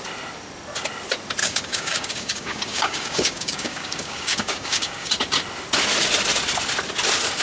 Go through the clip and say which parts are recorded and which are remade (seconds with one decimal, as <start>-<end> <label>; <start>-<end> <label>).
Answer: 0.0-1.4 recorded; 1.4-5.1 remade; 5.1-7.4 recorded